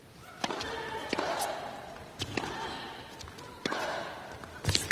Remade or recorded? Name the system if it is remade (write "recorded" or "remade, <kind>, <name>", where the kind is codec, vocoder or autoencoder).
recorded